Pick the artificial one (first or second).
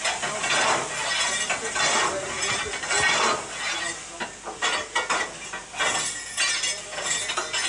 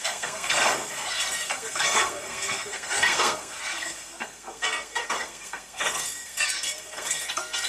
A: second